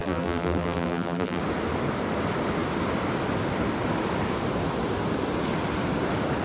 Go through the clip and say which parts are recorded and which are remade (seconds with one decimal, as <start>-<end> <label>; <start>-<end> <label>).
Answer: 0.0-1.4 remade; 1.4-6.4 recorded